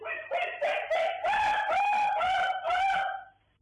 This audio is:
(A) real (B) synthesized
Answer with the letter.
B